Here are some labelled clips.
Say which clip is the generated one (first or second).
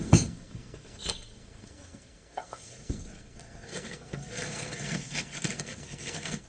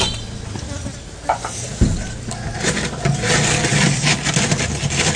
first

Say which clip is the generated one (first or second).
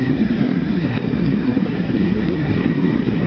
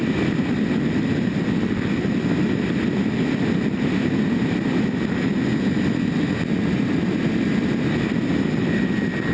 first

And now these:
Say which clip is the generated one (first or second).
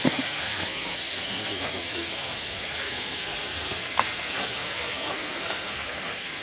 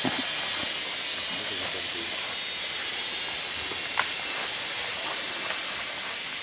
first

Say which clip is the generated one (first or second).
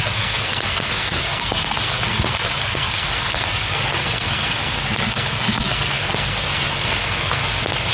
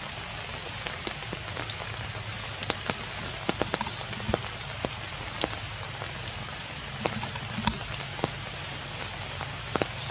first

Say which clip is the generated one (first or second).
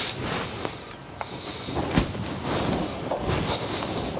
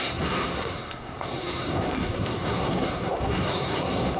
second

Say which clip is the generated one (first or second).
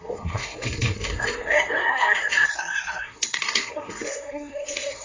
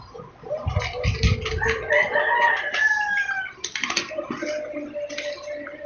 first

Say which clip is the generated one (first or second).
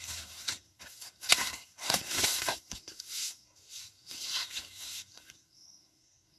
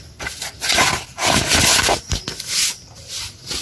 first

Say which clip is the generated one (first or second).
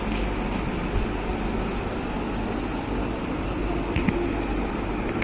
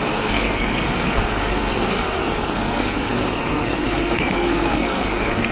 second